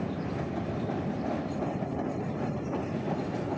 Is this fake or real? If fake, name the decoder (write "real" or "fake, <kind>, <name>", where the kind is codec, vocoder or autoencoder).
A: real